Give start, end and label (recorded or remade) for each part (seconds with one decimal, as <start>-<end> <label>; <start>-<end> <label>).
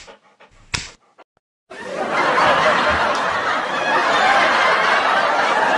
0.0-4.0 recorded; 4.0-5.3 remade; 5.3-5.8 recorded